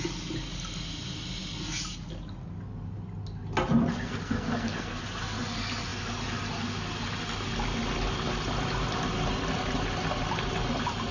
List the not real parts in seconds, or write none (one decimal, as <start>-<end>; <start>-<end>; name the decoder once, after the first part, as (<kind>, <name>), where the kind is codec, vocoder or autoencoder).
3.9-5.0 (codec, SNAC)